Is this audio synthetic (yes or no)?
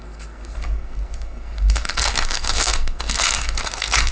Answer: yes